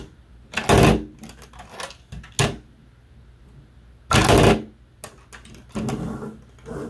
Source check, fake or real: real